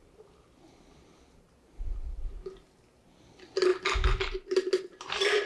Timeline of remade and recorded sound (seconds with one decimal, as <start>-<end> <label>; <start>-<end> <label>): 0.0-5.5 recorded